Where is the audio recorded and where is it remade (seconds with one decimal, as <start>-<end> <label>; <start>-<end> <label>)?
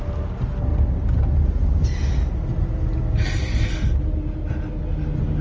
0.0-5.4 recorded